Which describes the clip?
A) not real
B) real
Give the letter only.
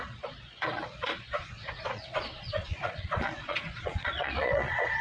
A